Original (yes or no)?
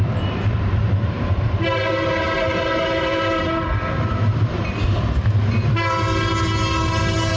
no